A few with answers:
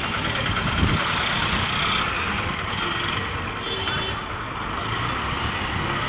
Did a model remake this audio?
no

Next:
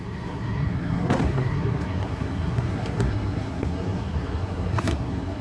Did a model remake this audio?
yes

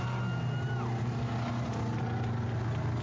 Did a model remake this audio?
no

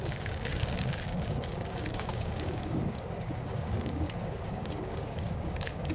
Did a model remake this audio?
yes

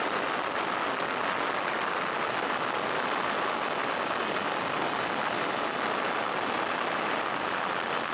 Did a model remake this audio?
no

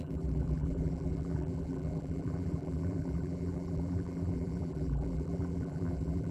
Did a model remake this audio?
yes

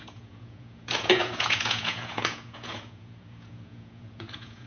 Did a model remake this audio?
yes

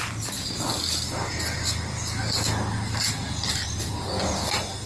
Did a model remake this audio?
no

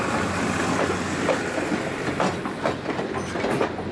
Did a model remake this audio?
no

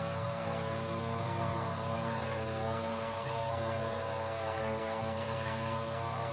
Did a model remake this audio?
yes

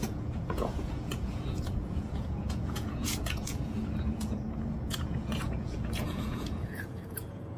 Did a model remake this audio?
yes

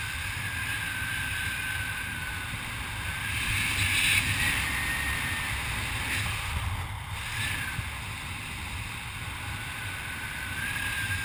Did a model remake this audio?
no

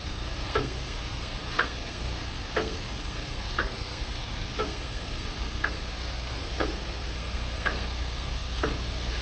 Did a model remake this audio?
yes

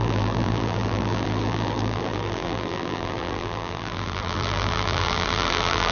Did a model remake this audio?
yes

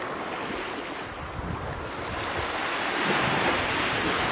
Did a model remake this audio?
no